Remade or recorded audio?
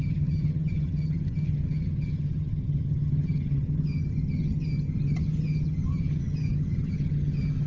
remade